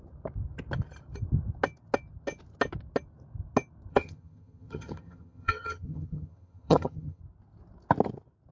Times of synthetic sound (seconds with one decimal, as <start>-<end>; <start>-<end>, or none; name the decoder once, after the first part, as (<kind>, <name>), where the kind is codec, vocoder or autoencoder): 3.9-7.2 (vocoder, HiFi-GAN)